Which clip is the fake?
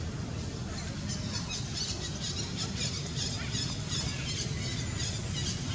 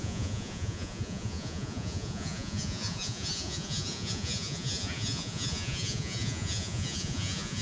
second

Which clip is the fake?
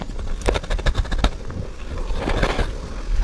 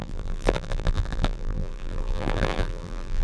second